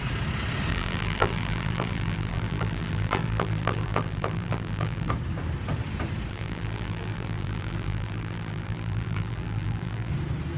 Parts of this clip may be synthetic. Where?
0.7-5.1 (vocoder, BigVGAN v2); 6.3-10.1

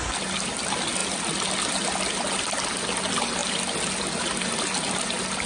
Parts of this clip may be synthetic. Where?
none

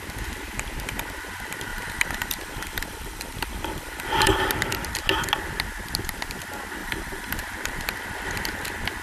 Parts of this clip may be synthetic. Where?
1.7-4.5 (vocoder, BigVGAN v2); 6.8-7.4

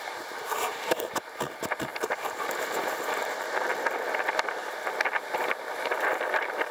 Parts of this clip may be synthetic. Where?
0.0-3.7 (vocoder, BigVGAN v2); 6.3-6.7

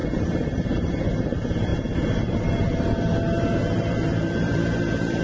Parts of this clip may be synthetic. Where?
0.0-5.2 (vocoder, BigVGAN v2)

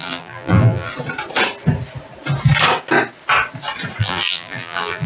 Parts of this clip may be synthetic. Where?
0.0-0.9 (vocoder, BigVGAN v2); 4.0-5.1

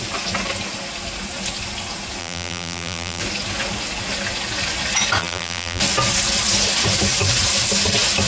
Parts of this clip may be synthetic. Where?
2.2-3.2 (vocoder, BigVGAN v2); 5.2-5.8